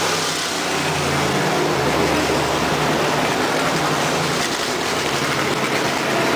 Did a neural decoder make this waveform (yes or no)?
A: no